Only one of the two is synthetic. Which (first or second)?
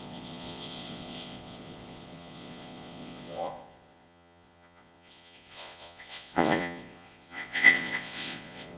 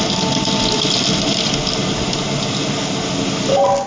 first